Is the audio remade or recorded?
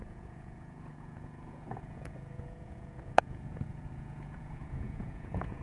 remade